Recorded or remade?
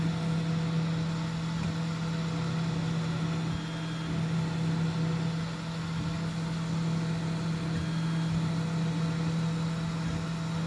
recorded